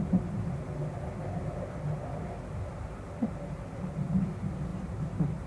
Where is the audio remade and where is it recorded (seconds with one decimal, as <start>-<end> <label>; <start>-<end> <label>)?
0.0-5.5 recorded